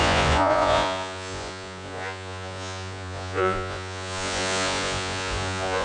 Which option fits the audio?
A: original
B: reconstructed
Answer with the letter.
B